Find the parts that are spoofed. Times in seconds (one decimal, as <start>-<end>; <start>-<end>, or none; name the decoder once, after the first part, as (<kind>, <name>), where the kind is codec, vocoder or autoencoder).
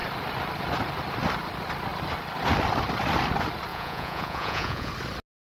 3.7-4.9 (vocoder, Vocos)